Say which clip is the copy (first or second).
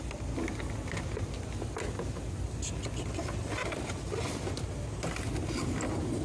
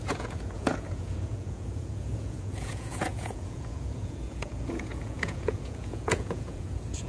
second